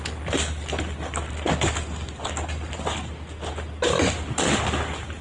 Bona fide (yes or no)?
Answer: yes